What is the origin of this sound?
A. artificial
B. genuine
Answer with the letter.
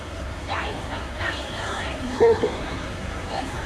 A